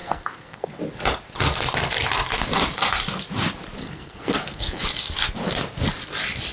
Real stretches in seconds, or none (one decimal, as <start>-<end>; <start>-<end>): 0.8-3.8; 4.8-6.5